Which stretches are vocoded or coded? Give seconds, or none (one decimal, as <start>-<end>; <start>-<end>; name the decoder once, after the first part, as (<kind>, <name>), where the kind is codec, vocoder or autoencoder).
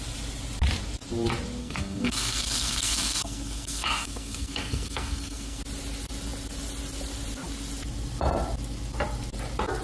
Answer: 1.6-5.6 (codec, SNAC)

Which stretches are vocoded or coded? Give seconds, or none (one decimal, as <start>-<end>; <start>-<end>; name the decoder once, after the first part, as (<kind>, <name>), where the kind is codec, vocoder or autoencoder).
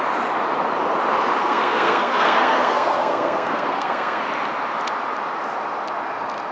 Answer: 1.4-4.2 (codec, SNAC)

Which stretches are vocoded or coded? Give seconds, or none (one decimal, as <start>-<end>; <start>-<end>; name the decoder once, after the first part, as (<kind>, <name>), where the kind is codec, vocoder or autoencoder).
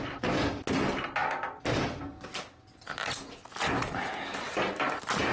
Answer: none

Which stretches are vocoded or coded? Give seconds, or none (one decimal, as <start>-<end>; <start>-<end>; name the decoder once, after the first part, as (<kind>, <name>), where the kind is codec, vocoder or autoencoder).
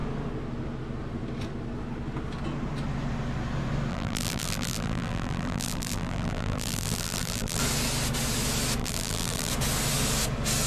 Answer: 3.9-7.6 (vocoder, BigVGAN v2); 8.8-9.5